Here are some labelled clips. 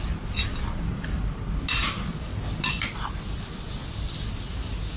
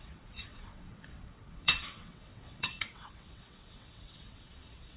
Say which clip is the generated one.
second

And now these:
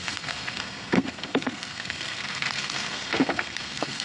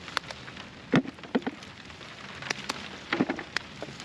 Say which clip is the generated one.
first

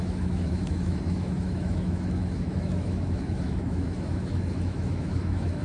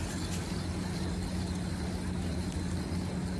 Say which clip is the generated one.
first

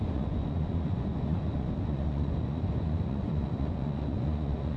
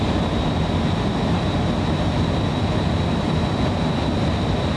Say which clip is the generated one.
first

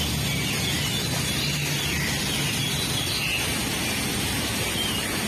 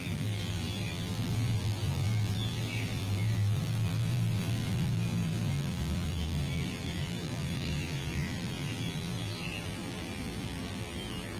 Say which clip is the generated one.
second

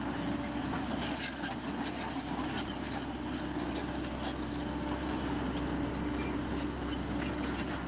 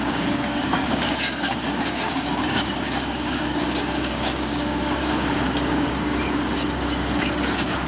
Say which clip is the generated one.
second